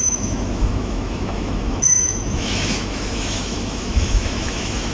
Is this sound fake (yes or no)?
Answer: yes